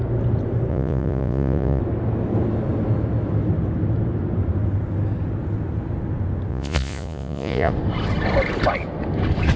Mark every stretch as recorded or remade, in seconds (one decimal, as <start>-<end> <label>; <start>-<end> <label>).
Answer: 0.0-0.7 recorded; 0.7-1.8 remade; 1.8-6.5 recorded; 6.5-7.7 remade; 7.7-9.6 recorded